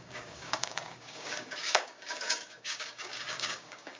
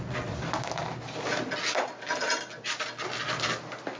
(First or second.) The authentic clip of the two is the second